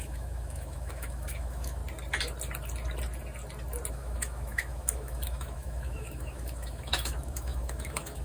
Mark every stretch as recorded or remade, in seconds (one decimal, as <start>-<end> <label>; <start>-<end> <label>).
0.0-1.8 remade; 1.8-3.9 recorded; 3.9-8.2 remade